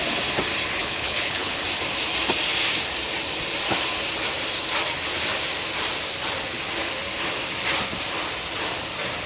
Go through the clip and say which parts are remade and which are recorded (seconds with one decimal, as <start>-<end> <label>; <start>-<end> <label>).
0.0-0.8 recorded; 0.8-1.6 remade; 1.6-9.3 recorded